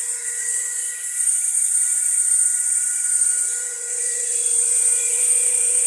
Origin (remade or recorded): remade